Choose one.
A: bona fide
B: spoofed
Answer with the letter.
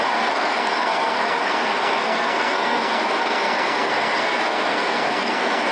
B